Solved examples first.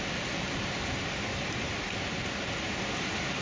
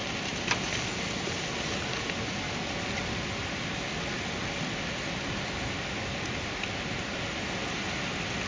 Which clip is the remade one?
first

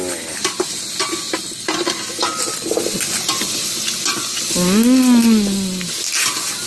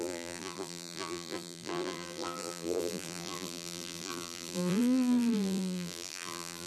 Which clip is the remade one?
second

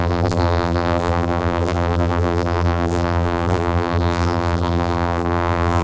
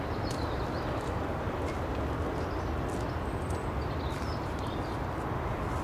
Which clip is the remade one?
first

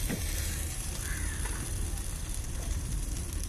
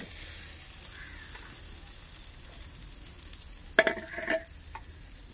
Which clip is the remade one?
first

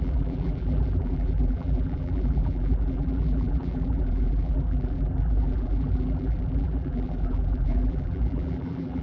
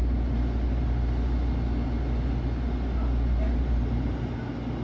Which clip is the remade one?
first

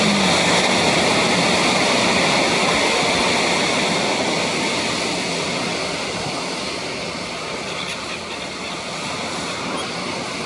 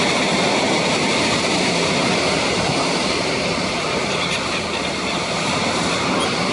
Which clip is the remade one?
second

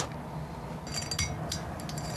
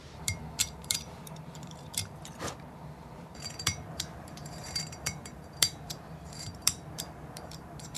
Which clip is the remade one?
second